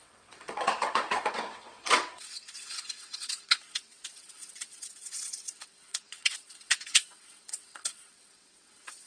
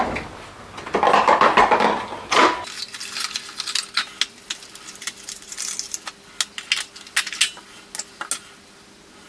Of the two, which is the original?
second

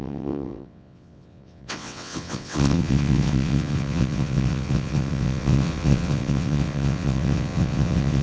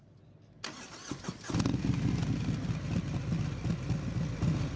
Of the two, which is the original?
second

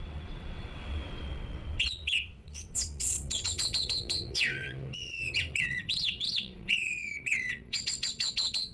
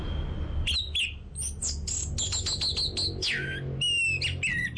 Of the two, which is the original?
second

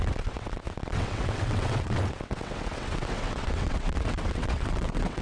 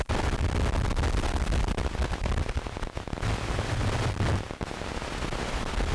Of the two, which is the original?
second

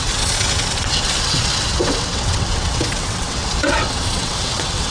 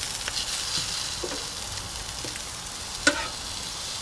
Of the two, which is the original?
second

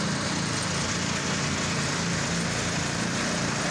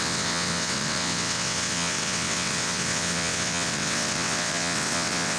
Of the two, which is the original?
first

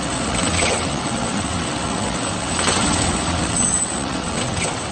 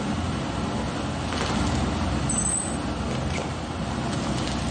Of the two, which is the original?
second